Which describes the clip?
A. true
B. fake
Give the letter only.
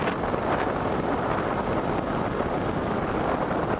A